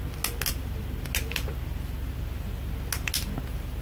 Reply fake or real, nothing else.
real